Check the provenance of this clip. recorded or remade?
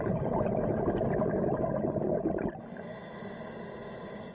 recorded